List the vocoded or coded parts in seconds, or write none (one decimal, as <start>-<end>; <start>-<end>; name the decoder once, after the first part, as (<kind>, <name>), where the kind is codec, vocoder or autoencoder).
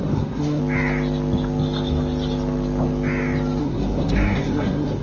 0.0-0.6 (codec, SNAC); 3.6-5.0